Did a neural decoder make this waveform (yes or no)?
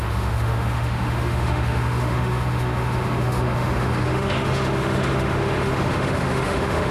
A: yes